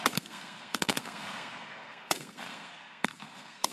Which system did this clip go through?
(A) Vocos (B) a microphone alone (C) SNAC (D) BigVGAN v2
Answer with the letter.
C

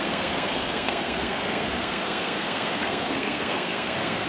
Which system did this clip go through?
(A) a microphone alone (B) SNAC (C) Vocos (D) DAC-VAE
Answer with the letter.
B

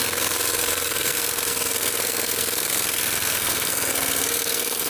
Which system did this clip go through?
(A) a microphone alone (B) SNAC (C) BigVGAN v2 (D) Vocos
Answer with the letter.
B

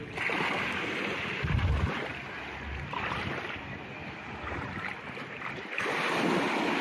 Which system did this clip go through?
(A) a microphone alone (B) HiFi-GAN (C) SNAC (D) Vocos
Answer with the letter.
A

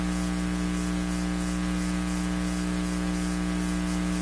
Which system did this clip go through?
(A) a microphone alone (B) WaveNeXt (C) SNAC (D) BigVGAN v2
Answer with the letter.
A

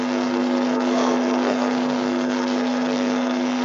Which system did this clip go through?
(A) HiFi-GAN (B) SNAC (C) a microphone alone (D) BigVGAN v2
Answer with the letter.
B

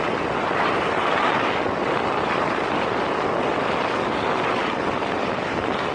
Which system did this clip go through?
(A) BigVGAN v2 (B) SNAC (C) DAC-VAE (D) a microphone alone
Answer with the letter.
D